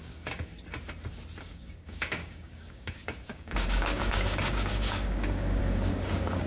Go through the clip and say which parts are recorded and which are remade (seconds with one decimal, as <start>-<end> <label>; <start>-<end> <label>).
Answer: 0.0-0.5 remade; 0.5-1.4 recorded; 1.4-6.5 remade